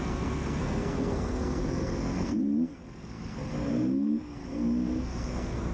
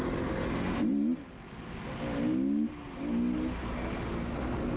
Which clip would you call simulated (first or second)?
first